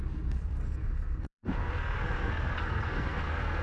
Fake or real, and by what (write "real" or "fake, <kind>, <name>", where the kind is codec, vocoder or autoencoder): fake, codec, SNAC